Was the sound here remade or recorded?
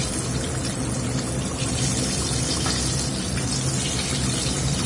recorded